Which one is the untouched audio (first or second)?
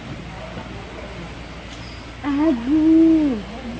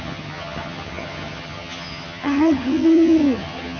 first